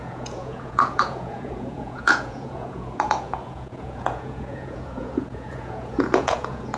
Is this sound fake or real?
fake